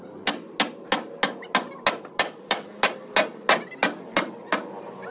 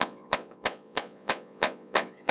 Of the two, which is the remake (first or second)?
second